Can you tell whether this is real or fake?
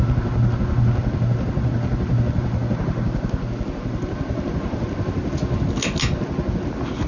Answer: real